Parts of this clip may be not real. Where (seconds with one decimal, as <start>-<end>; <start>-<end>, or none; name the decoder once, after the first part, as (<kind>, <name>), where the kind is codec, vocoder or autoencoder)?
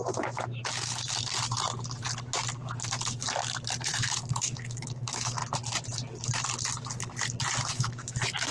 0.0-0.6 (autoencoder, DAC-VAE); 3.8-5.4; 7.7-8.5